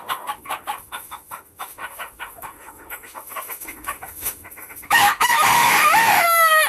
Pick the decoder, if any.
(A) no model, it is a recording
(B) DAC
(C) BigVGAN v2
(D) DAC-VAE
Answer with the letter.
D